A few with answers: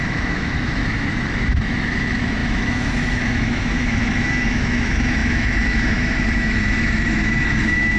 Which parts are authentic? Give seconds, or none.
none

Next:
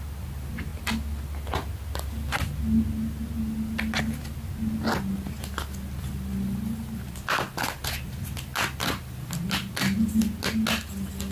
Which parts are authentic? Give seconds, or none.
0.0-11.3

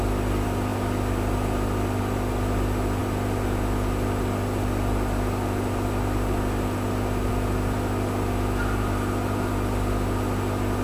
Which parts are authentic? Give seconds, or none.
0.0-10.8

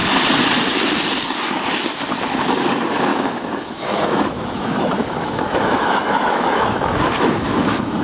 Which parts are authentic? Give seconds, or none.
0.0-3.1

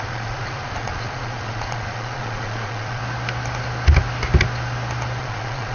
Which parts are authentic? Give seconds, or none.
3.0-5.2